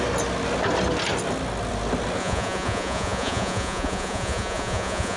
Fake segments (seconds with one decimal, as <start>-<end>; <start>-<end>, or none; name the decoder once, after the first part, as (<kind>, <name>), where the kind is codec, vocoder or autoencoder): 2.2-5.2 (vocoder, Vocos)